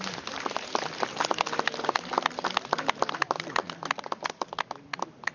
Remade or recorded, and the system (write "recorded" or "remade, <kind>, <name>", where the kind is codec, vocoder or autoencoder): recorded